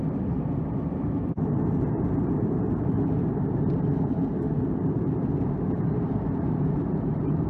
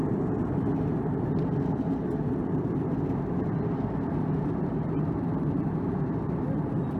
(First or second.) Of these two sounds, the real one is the second